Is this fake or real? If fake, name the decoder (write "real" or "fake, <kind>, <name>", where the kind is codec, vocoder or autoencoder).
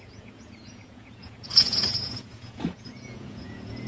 fake, vocoder, Vocos